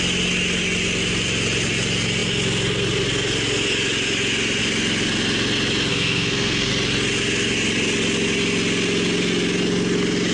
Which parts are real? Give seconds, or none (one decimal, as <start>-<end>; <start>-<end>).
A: 0.0-5.9; 6.7-10.3

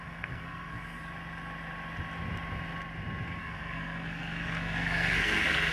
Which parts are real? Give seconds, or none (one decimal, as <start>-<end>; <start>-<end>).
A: 1.0-3.4